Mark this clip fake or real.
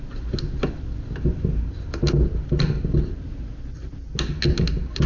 real